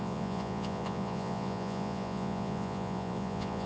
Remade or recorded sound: remade